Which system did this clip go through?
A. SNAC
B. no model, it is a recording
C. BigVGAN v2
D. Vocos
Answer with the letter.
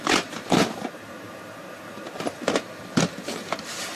C